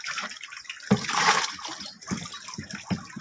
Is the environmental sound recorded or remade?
recorded